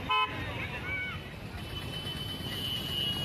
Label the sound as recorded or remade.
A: recorded